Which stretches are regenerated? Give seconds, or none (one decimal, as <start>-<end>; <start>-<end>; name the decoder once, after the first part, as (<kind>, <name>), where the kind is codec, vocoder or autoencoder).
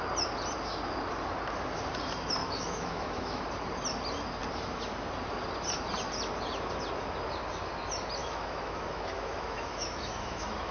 2.4-3.4 (autoencoder, DAC-VAE); 8.2-10.7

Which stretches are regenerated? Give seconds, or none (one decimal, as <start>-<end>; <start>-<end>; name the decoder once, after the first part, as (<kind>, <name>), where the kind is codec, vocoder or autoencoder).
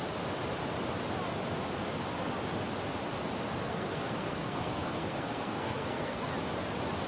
3.6-6.3 (codec, SNAC)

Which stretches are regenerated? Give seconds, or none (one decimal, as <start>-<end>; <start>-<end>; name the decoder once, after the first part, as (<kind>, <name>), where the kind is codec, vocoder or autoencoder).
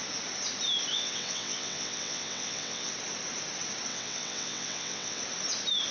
0.9-2.9 (vocoder, WaveNeXt); 3.9-5.2